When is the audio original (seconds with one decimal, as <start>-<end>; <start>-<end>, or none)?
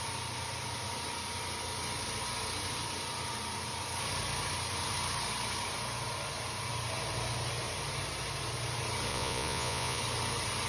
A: 0.0-9.1; 10.0-10.7